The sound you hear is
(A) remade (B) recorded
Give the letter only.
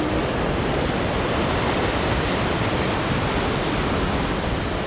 B